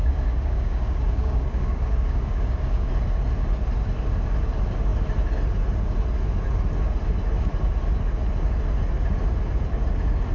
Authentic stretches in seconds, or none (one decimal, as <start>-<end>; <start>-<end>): 2.9-10.3